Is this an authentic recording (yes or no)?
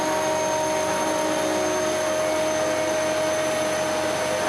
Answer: yes